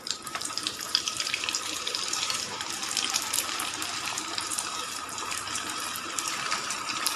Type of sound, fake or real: fake